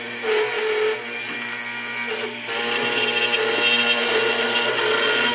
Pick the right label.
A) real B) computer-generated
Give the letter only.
A